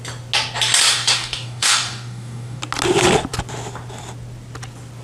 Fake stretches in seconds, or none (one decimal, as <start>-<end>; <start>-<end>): 0.9-2.6